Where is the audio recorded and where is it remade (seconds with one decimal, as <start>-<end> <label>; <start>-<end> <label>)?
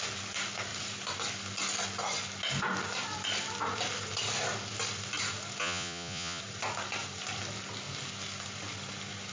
0.0-5.6 recorded; 5.6-6.4 remade; 6.4-9.3 recorded